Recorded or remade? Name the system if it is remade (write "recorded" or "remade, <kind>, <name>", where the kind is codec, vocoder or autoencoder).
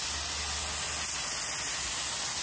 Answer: recorded